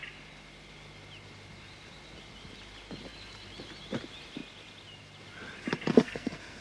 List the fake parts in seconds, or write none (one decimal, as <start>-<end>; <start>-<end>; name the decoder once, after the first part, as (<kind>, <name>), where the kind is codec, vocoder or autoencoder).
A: 5.9-6.6 (codec, SNAC)

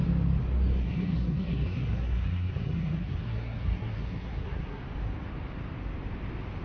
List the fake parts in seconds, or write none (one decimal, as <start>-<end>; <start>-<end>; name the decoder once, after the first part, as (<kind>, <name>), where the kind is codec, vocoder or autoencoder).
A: 0.8-4.8 (codec, SNAC)

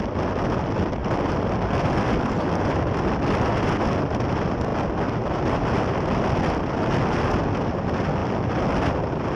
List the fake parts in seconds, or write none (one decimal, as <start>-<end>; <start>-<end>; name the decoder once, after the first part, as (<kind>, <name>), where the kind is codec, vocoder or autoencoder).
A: none

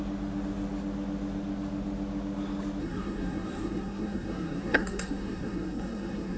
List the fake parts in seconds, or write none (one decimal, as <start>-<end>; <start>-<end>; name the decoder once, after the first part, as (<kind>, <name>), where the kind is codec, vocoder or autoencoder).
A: 2.8-6.4 (codec, SNAC)

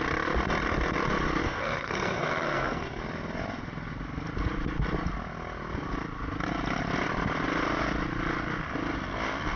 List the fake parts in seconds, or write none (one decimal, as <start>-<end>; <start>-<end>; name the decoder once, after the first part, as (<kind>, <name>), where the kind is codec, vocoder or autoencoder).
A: 1.4-3.0 (codec, SNAC)

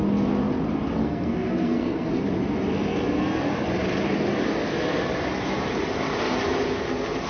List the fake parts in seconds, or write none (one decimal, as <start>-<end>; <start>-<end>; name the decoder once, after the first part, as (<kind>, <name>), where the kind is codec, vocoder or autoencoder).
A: 1.0-2.1 (codec, SNAC)

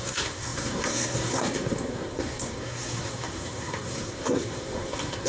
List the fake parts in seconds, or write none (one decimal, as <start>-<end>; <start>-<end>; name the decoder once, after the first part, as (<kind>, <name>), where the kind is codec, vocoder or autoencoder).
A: 0.0-5.3 (codec, SNAC)

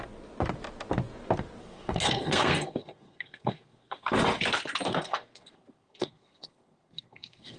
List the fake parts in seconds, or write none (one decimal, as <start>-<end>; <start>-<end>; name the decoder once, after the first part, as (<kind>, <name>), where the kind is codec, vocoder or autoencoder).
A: 1.6-4.1 (codec, SNAC); 4.9-7.6